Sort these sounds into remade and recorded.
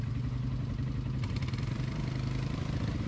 recorded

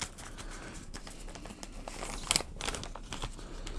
recorded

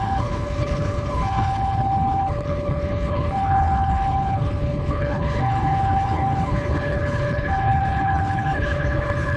remade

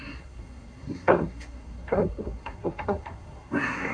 remade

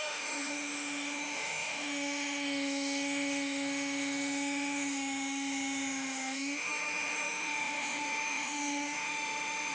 remade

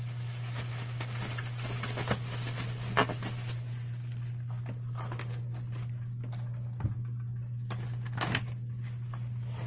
recorded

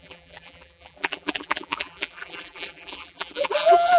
remade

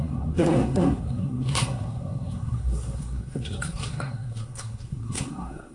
remade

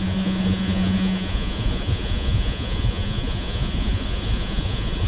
remade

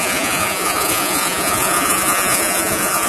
remade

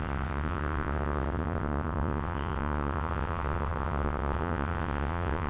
remade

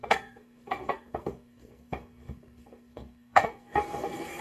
remade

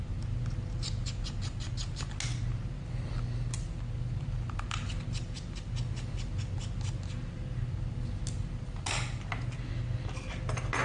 recorded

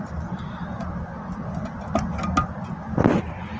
recorded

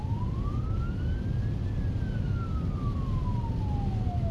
recorded